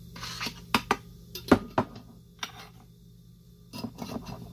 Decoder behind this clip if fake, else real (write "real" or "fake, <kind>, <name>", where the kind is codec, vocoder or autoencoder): real